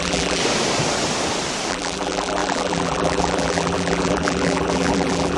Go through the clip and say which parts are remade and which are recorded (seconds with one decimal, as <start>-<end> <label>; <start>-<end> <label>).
0.0-0.4 remade; 0.4-1.7 recorded; 1.7-5.4 remade